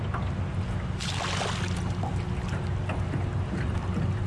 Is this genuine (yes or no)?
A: yes